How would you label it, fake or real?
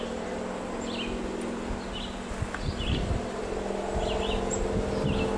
real